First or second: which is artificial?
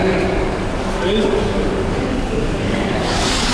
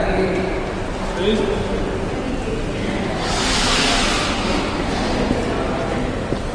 first